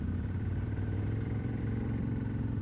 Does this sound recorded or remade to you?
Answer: remade